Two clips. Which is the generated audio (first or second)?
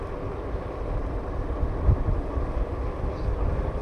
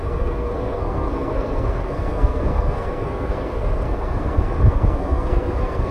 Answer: second